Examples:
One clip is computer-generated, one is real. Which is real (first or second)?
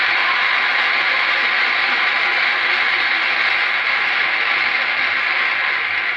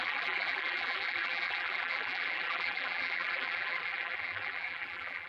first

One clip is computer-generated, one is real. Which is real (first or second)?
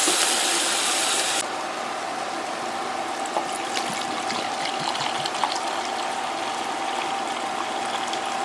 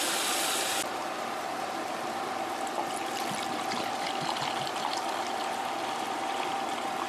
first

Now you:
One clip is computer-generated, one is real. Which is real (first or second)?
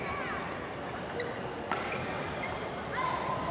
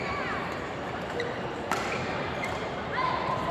first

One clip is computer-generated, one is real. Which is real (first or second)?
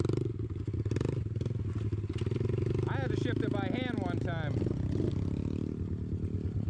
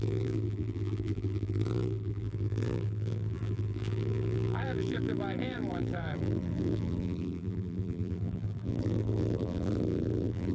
first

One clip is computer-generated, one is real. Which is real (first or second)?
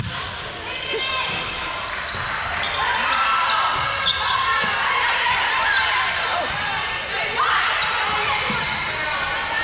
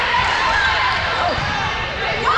first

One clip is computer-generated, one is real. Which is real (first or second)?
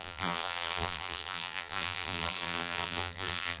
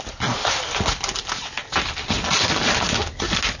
second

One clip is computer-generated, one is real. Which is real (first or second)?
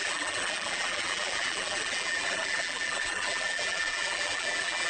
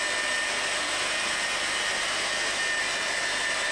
second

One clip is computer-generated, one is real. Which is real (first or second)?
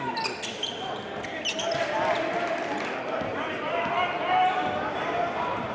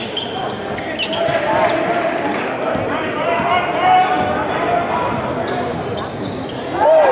second